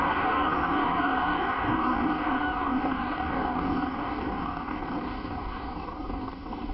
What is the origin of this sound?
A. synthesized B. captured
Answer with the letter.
A